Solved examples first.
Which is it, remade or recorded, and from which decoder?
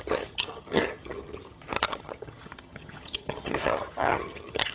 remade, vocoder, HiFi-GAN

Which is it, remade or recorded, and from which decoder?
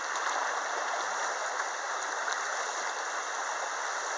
recorded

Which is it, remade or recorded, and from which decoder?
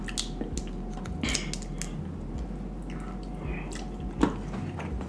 recorded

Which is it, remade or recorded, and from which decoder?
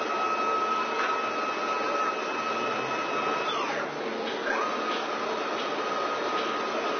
recorded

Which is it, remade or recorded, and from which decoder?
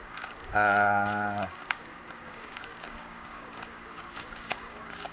remade, codec, DAC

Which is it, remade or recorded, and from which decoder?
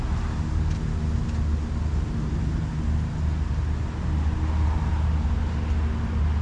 recorded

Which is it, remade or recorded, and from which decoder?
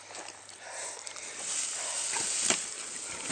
recorded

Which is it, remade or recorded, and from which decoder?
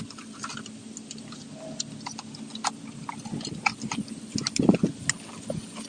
recorded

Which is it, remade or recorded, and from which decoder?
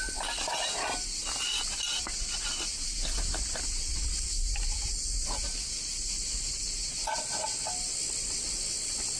recorded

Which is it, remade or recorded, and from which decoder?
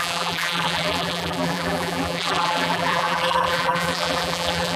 remade, vocoder, BigVGAN v2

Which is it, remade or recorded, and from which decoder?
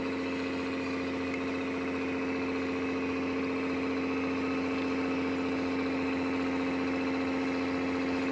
recorded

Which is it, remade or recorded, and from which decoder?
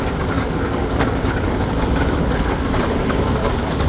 remade, codec, DAC